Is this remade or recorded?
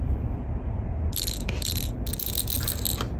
recorded